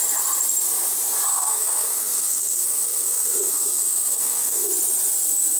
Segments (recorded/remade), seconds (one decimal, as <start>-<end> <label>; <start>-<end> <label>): 0.0-1.3 recorded; 1.3-4.7 remade; 4.7-5.6 recorded